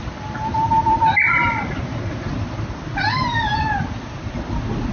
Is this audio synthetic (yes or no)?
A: no